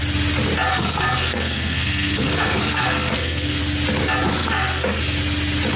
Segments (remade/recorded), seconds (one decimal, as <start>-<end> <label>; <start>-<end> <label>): 0.0-0.7 recorded; 0.7-3.6 remade; 3.6-4.4 recorded; 4.4-5.0 remade; 5.0-5.8 recorded